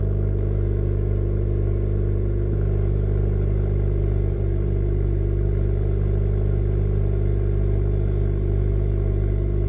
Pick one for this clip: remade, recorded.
remade